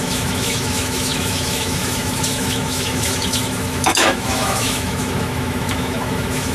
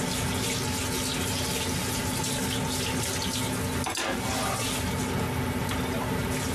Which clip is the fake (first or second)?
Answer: first